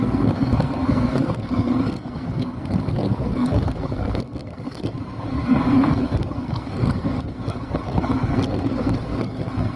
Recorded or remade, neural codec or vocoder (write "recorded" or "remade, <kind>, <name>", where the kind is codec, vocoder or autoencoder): remade, codec, SNAC